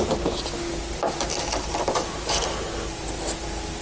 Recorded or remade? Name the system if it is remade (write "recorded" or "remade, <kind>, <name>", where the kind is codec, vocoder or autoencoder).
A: recorded